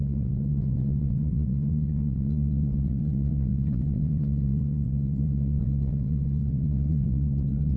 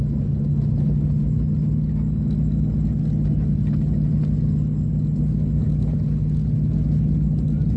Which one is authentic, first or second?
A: second